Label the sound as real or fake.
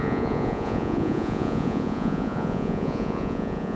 fake